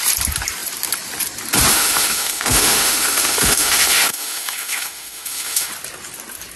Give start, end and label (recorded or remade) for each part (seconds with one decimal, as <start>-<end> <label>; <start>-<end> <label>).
0.0-1.7 recorded; 1.7-5.7 remade; 5.7-6.6 recorded